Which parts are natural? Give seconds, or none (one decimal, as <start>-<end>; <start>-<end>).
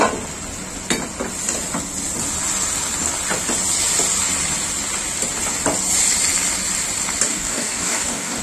0.0-7.3